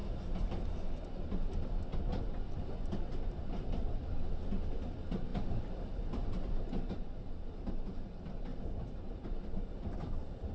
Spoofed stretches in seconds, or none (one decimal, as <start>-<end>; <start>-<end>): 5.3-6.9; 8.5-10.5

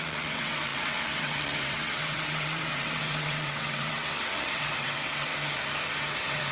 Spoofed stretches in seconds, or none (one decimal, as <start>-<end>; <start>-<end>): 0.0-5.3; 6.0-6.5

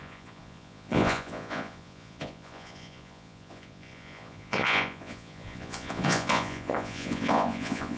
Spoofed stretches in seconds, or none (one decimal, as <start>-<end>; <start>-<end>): 0.0-8.0